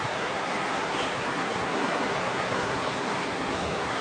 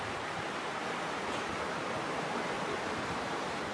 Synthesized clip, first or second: first